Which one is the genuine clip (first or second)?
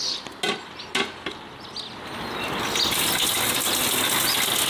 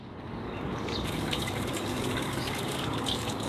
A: first